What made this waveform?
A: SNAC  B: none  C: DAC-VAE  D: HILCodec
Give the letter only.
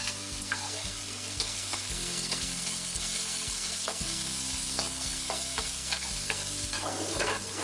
A